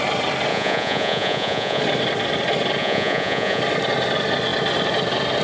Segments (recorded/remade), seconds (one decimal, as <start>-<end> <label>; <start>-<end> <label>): 0.0-0.5 recorded; 0.5-1.8 remade; 1.8-2.8 recorded; 2.8-3.6 remade; 3.6-5.4 recorded